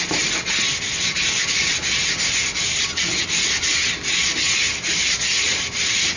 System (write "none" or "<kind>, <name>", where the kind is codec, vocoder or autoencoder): none